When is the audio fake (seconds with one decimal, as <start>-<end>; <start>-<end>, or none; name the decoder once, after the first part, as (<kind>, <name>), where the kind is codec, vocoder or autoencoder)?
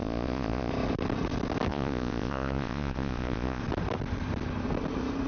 0.0-0.7 (vocoder, Vocos); 1.7-3.6